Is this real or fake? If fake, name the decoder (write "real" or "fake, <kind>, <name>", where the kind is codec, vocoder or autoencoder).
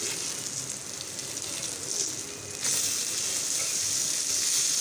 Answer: real